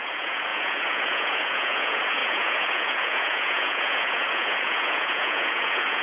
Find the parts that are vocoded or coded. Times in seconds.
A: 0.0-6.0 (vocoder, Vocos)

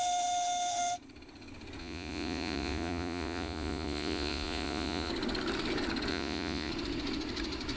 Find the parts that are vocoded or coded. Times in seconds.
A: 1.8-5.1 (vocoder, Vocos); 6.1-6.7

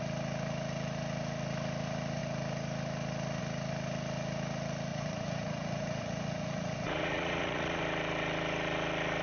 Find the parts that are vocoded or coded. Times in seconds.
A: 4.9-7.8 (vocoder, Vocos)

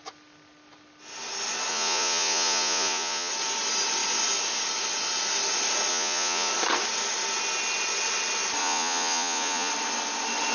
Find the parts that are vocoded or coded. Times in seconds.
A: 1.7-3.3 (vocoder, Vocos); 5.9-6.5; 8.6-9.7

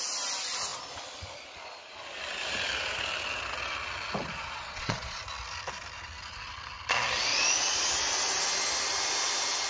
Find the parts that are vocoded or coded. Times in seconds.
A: 4.3-5.2 (vocoder, Vocos); 7.3-7.9

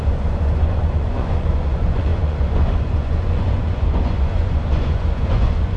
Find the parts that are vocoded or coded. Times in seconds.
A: 0.0-5.8 (vocoder, Vocos)